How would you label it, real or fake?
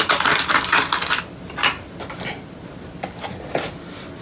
real